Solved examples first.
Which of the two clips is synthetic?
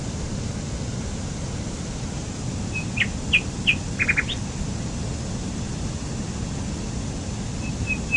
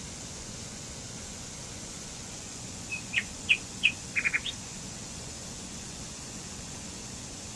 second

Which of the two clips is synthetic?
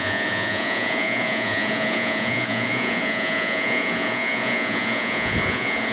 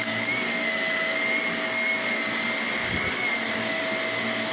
first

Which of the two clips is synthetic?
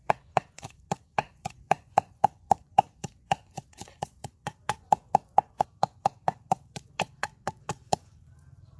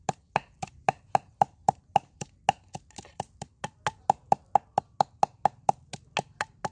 first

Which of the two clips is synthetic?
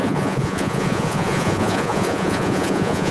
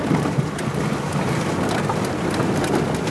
first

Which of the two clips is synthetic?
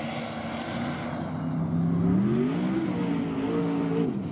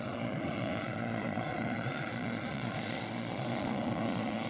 second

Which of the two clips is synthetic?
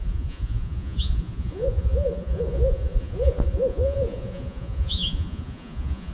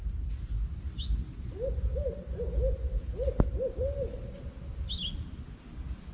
first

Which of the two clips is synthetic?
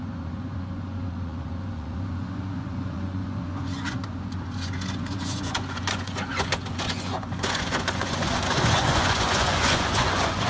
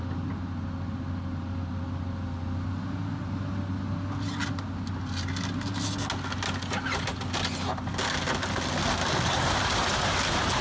first